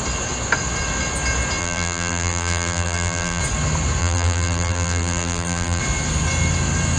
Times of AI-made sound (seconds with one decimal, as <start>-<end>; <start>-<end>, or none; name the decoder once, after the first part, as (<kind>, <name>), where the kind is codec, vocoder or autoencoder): 1.6-3.4 (vocoder, BigVGAN v2); 4.0-5.8